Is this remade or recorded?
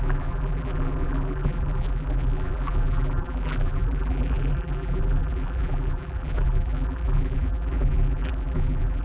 remade